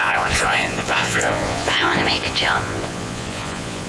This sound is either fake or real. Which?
fake